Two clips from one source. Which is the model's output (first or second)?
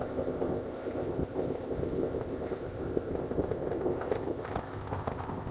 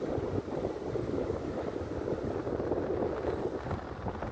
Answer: first